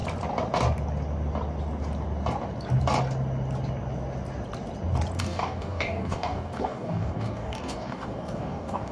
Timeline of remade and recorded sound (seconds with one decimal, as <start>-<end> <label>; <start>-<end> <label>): 0.0-5.2 recorded; 5.2-8.9 remade